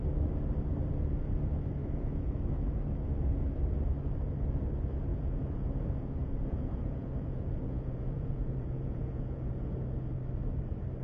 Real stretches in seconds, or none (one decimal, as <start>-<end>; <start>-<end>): 0.0-1.8; 2.4-5.1; 9.5-11.0